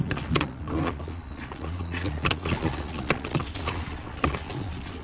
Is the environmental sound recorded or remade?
remade